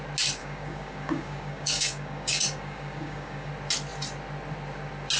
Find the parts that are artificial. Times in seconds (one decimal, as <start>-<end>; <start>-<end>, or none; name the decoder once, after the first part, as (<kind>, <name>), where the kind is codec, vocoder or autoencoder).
0.4-3.5 (codec, DAC)